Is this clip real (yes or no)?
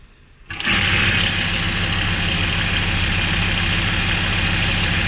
yes